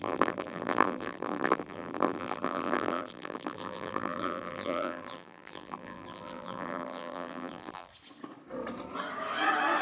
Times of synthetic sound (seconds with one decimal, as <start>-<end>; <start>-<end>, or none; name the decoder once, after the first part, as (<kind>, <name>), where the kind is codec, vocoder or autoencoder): 0.0-7.9 (vocoder, BigVGAN v2)